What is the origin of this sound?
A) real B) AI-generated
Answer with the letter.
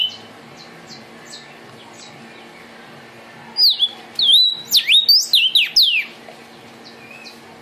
A